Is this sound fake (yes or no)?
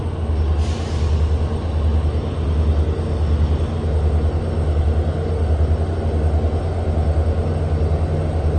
no